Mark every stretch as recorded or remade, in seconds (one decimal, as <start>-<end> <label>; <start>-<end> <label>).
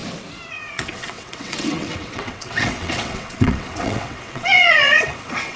0.0-0.5 recorded; 0.5-5.6 remade